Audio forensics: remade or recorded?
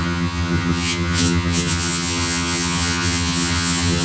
remade